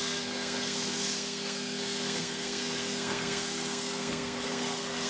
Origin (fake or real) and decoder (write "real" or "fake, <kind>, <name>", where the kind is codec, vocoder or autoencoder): fake, codec, SNAC